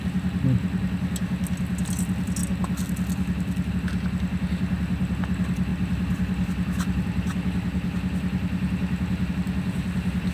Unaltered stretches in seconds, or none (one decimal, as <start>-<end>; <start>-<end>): 0.0-10.3